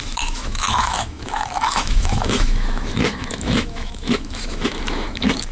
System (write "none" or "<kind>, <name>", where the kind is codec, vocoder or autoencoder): autoencoder, DAC-VAE